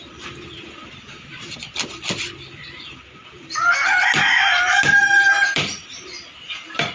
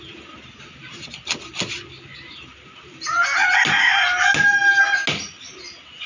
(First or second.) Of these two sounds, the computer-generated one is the first